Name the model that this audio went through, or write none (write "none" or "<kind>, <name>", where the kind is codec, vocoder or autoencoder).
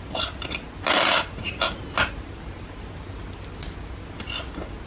none